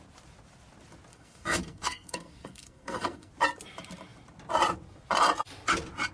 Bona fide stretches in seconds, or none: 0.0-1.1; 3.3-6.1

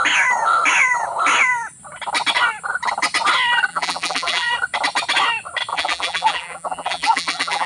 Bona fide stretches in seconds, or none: 0.0-3.7; 4.5-5.7

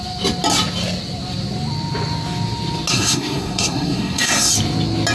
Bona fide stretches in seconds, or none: 0.0-2.9; 4.5-5.1

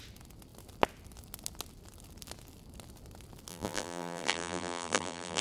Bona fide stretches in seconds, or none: 0.0-3.5